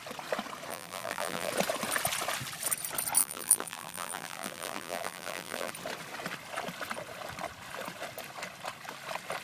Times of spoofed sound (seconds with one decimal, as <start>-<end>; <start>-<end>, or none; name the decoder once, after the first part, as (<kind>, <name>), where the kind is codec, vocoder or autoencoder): 0.7-1.5 (vocoder, BigVGAN v2); 3.2-5.7